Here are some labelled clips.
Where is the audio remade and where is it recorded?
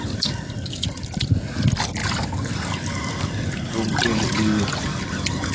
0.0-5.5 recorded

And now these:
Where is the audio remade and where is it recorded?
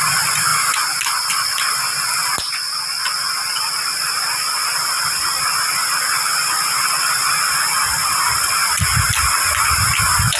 0.0-10.4 recorded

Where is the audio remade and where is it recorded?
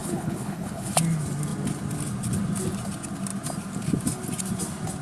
0.0-0.9 remade; 0.9-5.0 recorded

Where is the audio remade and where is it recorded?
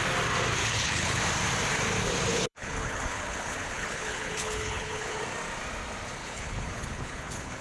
0.0-0.6 recorded; 0.6-1.2 remade; 1.2-2.3 recorded; 2.3-5.2 remade; 5.2-6.2 recorded; 6.2-7.6 remade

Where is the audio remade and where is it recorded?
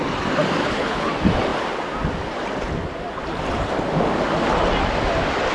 0.0-0.6 recorded; 0.6-1.1 remade; 1.1-5.5 recorded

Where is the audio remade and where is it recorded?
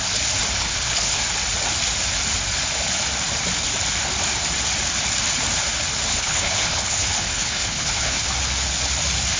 0.0-0.6 recorded; 0.6-1.2 remade; 1.2-6.1 recorded; 6.1-8.3 remade; 8.3-9.4 recorded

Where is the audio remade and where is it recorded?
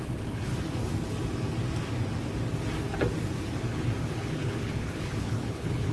0.0-0.5 remade; 0.5-4.0 recorded; 4.0-5.9 remade